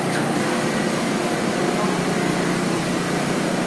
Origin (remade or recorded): recorded